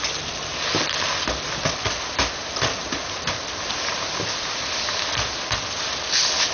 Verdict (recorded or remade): recorded